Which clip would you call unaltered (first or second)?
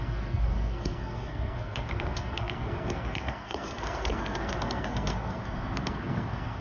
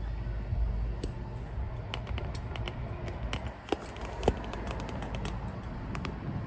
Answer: second